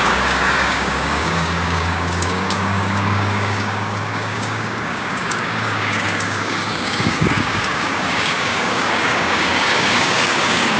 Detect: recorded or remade remade